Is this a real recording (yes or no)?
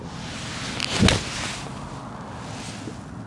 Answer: yes